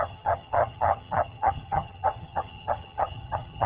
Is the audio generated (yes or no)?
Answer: yes